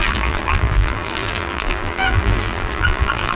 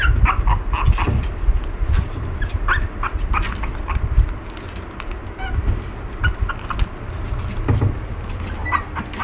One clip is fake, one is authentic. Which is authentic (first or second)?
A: second